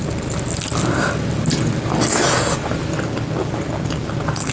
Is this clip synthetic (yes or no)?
no